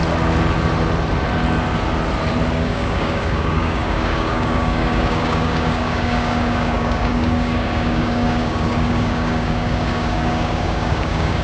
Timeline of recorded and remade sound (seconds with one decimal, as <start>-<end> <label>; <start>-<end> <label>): 0.0-2.5 recorded; 2.5-11.4 remade